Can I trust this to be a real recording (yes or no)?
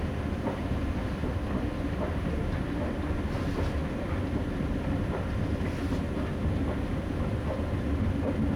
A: yes